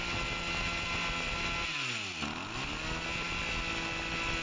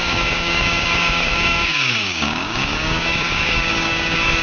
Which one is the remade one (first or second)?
second